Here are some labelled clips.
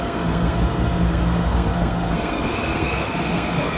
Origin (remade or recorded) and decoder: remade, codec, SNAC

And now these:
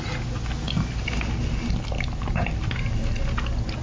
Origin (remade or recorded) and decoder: recorded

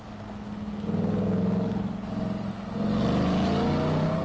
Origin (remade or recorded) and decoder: recorded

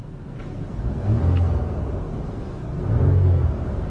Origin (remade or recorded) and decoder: remade, codec, SNAC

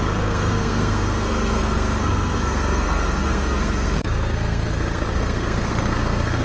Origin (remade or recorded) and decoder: remade, codec, SNAC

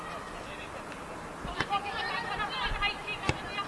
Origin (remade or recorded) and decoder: recorded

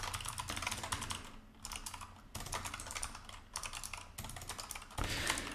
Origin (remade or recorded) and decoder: recorded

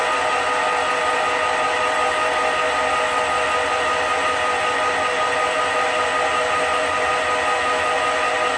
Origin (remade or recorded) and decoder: recorded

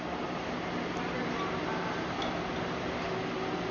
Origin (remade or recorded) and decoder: recorded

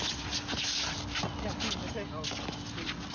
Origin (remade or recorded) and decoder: recorded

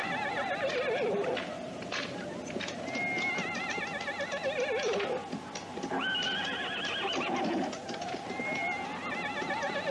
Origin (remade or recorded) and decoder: recorded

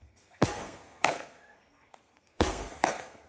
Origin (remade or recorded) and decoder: remade, codec, SNAC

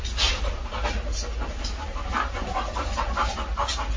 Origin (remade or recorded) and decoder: recorded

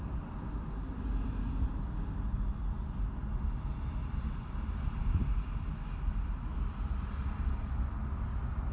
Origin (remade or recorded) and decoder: recorded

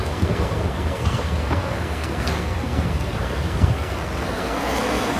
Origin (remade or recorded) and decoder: remade, codec, SNAC